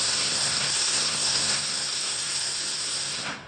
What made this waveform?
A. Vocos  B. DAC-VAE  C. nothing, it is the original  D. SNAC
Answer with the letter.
D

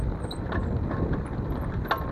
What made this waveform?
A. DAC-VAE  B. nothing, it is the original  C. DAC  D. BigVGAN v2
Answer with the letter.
B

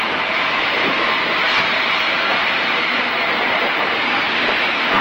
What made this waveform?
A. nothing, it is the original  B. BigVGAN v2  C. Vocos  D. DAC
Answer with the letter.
B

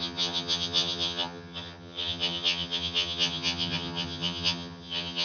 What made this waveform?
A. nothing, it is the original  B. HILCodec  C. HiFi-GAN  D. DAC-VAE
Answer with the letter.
C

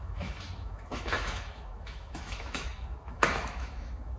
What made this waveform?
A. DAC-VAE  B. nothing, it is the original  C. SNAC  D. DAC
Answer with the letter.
A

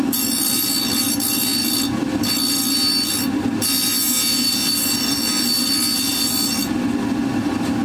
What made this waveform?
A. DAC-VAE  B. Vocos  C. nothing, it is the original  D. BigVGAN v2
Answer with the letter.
D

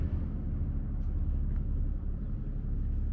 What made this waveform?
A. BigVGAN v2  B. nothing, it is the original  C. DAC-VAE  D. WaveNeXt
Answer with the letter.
B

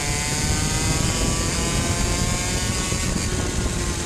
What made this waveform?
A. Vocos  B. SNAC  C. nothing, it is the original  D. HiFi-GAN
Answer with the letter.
C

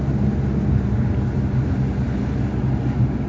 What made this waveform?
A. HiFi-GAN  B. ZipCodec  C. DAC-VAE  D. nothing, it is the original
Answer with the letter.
D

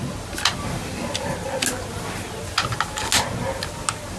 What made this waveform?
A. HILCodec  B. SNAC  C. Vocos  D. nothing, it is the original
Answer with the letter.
D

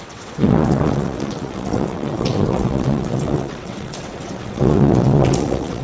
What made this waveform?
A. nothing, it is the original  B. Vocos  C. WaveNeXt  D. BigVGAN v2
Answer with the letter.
C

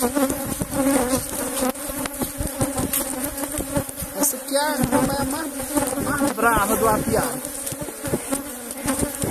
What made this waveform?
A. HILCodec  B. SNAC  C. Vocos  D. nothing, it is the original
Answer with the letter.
D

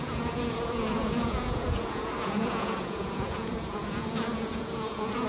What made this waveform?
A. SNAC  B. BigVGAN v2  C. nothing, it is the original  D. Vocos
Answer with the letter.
D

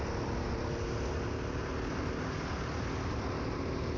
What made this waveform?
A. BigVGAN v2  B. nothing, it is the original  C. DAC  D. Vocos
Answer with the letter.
B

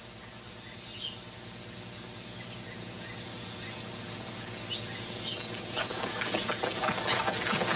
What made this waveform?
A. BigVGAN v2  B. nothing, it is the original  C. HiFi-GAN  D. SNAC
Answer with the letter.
B